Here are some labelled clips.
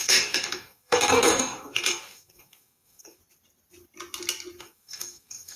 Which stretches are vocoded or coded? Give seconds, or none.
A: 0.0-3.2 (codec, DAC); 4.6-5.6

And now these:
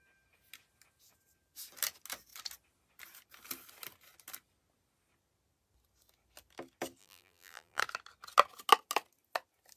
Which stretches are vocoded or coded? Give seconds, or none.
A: 7.0-7.8 (vocoder, BigVGAN v2)

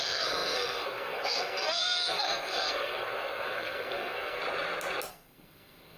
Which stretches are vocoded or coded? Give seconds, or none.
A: 0.0-4.4 (codec, SNAC); 5.1-6.0

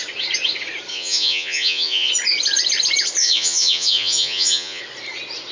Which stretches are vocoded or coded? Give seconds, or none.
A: 0.9-2.1 (vocoder, Vocos); 3.2-4.8

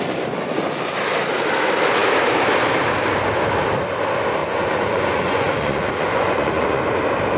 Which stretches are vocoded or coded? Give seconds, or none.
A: 4.4-6.8 (vocoder, Vocos)

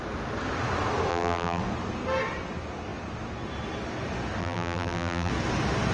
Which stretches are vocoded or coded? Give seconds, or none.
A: 1.1-1.6 (vocoder, BigVGAN v2); 4.4-5.3

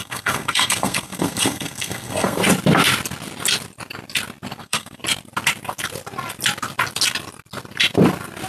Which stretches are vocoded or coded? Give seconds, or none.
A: 0.0-2.4 (codec, SNAC); 4.6-5.0

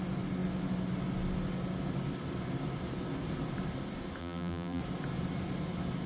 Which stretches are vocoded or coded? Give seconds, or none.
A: 4.2-4.8 (vocoder, BigVGAN v2)